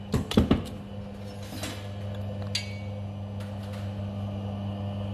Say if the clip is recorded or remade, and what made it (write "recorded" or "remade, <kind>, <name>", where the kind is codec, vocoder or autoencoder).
recorded